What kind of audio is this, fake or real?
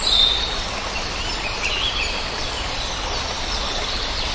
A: real